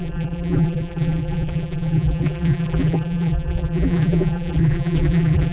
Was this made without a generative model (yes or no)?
no